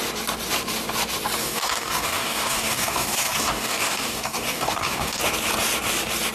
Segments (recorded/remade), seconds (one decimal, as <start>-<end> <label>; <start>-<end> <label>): 0.0-1.4 recorded; 1.4-5.2 remade; 5.2-6.3 recorded